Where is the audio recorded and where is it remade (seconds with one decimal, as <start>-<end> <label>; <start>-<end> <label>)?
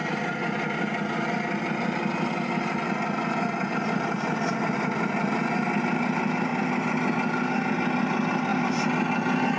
0.0-9.6 recorded